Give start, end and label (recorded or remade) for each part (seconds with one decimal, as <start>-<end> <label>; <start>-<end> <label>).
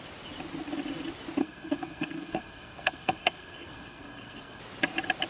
0.0-1.4 recorded; 1.4-4.6 remade; 4.6-5.3 recorded